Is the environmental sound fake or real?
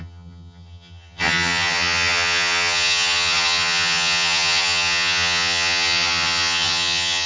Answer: fake